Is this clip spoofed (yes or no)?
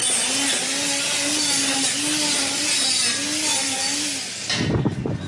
no